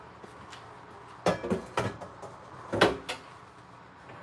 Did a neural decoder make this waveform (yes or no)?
no